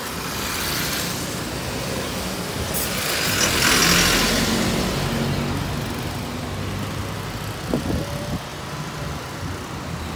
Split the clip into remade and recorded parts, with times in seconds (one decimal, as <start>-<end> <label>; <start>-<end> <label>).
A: 0.0-10.2 recorded